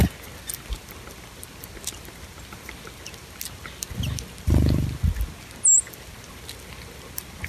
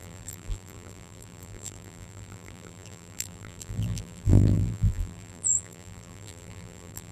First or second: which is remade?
second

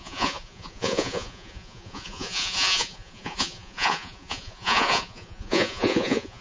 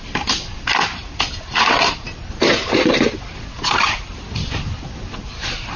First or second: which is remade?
first